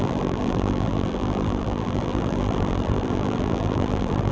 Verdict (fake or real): fake